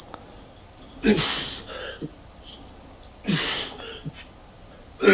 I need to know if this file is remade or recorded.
recorded